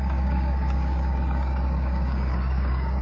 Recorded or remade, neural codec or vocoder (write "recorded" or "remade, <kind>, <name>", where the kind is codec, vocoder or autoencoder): remade, codec, DAC